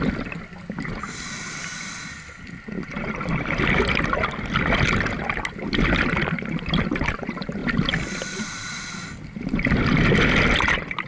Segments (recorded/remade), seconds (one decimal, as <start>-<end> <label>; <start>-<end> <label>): 0.0-11.1 recorded